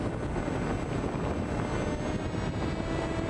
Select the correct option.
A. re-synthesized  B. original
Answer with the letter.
B